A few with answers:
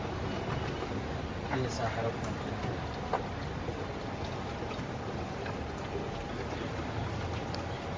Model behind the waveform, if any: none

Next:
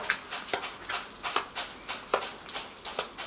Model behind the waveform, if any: none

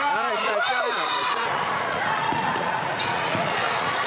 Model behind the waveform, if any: vocoder, Vocos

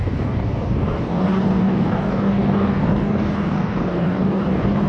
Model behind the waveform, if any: codec, DAC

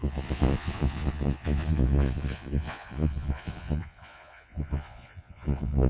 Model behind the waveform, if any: vocoder, Vocos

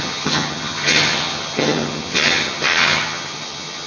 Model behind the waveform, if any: vocoder, HiFi-GAN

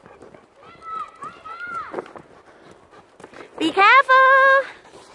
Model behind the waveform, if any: none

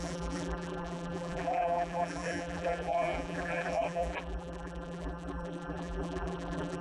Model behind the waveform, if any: vocoder, BigVGAN v2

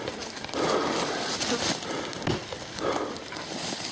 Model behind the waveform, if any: none